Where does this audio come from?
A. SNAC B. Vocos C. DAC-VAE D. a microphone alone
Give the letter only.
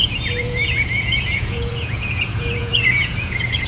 B